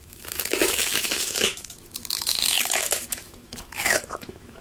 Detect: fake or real fake